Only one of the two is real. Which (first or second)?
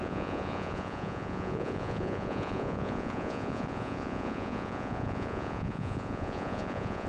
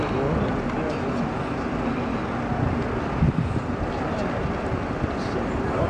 second